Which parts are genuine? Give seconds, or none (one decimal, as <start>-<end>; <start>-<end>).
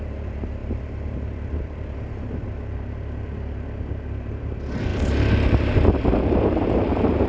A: 4.9-6.2